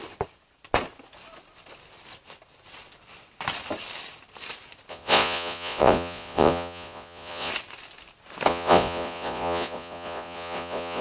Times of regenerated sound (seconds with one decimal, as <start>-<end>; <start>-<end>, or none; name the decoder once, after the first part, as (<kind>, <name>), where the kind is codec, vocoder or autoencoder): 4.9-7.5 (vocoder, Vocos); 8.5-11.0